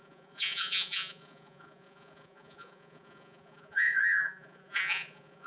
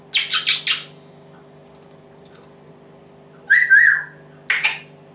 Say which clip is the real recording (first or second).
second